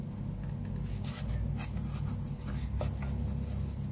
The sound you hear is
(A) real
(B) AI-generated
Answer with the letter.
A